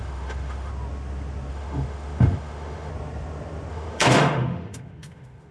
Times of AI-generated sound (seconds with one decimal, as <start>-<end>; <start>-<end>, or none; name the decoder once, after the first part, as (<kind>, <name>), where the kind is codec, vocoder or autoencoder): 0.0-0.7 (autoencoder, DAC-VAE); 1.5-2.9; 3.7-5.5

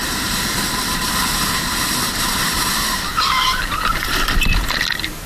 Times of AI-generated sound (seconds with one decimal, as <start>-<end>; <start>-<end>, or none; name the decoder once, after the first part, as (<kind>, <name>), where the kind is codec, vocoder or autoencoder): none